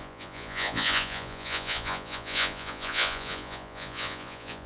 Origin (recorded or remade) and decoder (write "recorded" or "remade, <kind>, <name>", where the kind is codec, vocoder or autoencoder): remade, vocoder, Vocos